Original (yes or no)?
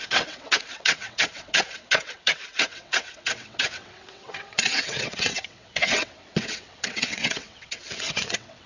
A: no